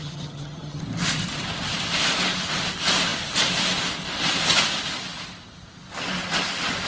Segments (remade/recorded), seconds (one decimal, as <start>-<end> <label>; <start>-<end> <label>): 0.0-0.8 remade; 0.8-6.9 recorded